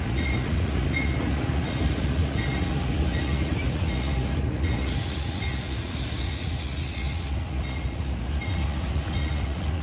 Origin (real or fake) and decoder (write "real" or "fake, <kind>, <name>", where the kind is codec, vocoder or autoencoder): fake, vocoder, Vocos